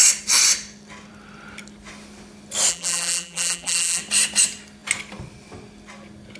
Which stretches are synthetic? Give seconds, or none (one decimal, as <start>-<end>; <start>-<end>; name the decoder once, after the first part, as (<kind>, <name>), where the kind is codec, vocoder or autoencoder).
2.7-4.0 (vocoder, BigVGAN v2)